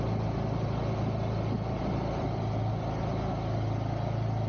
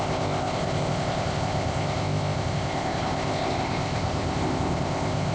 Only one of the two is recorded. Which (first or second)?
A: first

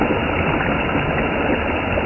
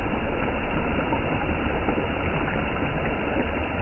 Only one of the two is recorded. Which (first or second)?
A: first